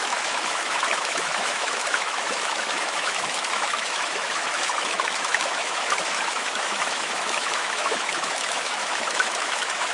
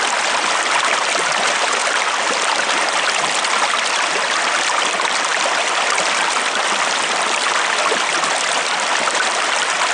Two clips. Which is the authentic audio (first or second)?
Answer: second